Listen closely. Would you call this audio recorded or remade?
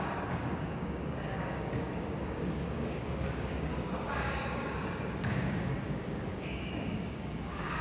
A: remade